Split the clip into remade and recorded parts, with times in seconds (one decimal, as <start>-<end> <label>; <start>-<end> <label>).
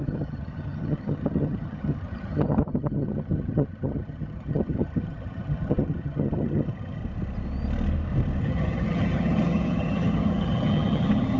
0.0-7.0 remade; 7.0-8.4 recorded; 8.4-11.4 remade